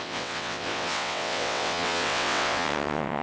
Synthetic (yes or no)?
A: yes